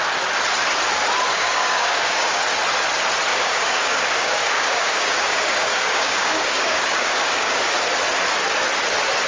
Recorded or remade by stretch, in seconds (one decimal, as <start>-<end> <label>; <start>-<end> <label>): 0.0-1.3 recorded; 1.3-2.4 remade; 2.4-3.3 recorded; 3.3-7.8 remade; 7.8-9.3 recorded

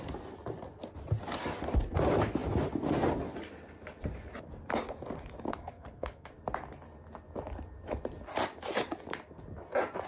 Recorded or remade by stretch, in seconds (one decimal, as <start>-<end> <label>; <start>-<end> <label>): 0.0-5.5 recorded; 5.5-6.3 remade; 6.3-10.1 recorded

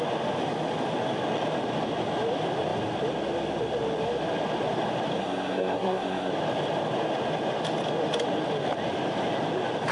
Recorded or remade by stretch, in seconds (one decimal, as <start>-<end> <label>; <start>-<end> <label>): 0.0-5.2 recorded; 5.2-6.3 remade; 6.3-9.9 recorded

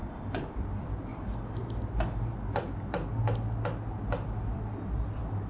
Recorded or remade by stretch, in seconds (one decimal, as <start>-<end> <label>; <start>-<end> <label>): 0.0-1.1 remade; 1.1-4.4 recorded; 4.4-5.5 remade